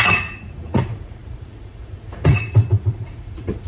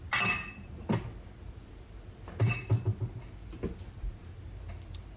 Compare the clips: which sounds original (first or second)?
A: second